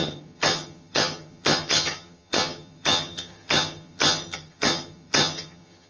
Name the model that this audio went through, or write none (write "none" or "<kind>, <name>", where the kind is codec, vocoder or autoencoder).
vocoder, HiFi-GAN